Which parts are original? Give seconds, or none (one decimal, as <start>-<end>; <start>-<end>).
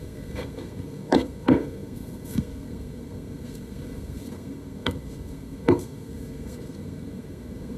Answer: none